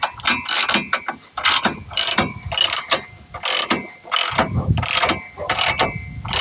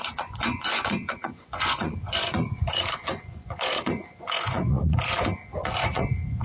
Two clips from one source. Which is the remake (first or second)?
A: second